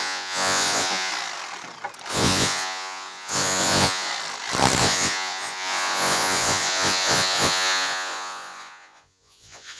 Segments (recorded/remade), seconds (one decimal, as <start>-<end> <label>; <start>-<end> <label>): 0.0-1.1 remade; 1.1-2.1 recorded; 2.1-4.1 remade; 4.1-4.8 recorded; 4.8-9.8 remade